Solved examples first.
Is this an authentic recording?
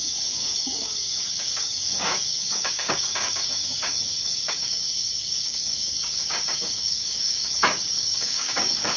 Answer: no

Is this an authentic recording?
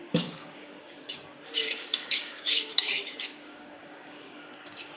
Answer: no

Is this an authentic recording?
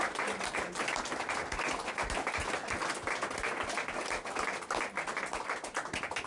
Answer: yes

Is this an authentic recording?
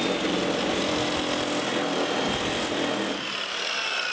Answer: yes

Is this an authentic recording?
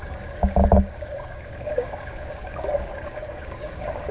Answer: no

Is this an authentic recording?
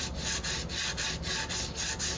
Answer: yes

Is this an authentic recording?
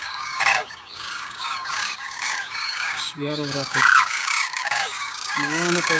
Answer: no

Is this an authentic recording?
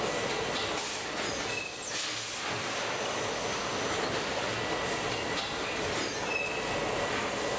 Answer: yes